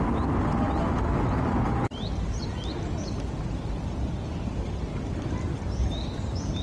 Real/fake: real